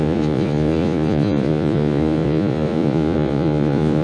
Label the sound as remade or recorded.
remade